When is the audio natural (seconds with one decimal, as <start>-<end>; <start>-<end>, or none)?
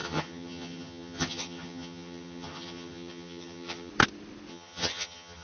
3.9-4.5